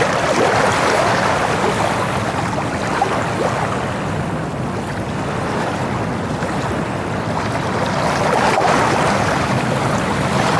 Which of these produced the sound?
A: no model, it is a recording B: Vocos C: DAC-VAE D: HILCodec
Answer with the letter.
A